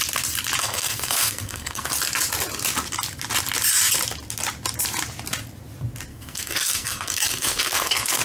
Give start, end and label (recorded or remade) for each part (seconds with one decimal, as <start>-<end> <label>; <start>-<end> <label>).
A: 0.0-0.6 recorded; 0.6-1.9 remade; 1.9-6.1 recorded; 6.1-8.2 remade